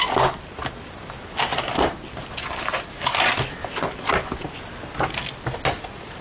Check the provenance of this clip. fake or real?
real